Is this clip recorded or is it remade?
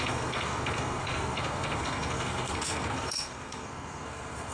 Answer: remade